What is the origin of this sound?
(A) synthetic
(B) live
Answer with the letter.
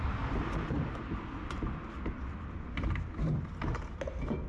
B